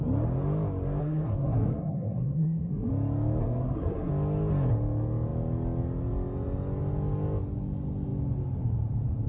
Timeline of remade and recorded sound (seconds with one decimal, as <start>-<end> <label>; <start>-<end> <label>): 0.0-1.0 recorded; 1.0-2.9 remade; 2.9-3.4 recorded; 3.4-4.1 remade; 4.1-9.3 recorded